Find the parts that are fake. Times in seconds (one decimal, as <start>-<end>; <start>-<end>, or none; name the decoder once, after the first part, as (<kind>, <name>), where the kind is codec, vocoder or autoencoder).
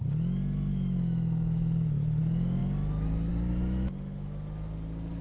0.7-2.2 (autoencoder, DAC-VAE)